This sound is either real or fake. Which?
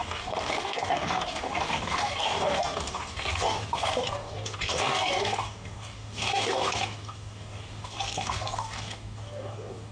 fake